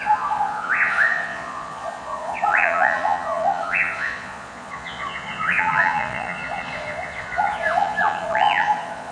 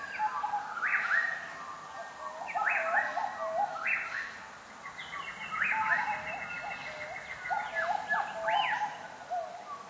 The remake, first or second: first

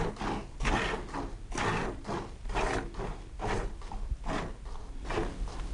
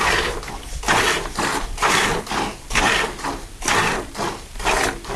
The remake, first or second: second